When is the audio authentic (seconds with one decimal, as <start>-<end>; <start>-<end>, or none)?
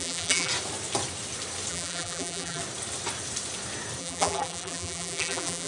0.5-1.7; 2.6-4.0